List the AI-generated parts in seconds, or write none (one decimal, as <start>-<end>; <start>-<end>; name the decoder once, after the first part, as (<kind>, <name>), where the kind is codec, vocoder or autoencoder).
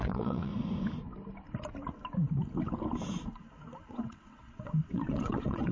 0.0-0.5 (vocoder, WaveNeXt); 3.9-5.7